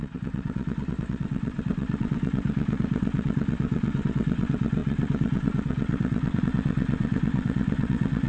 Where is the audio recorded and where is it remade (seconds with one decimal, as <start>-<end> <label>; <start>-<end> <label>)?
0.0-8.3 remade